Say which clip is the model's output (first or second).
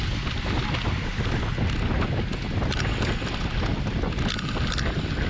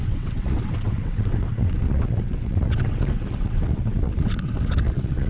second